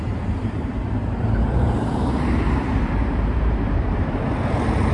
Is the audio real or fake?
fake